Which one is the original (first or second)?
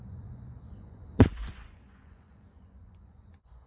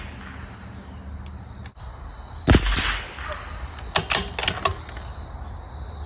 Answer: second